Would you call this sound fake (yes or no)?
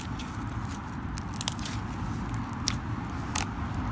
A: no